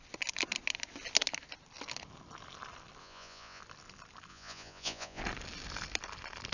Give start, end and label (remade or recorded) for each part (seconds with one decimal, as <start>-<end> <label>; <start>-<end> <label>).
0.0-3.0 recorded; 3.0-3.6 remade; 3.6-4.3 recorded; 4.3-5.2 remade; 5.2-6.5 recorded